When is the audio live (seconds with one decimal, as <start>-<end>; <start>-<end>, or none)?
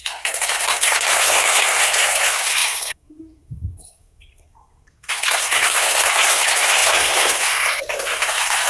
none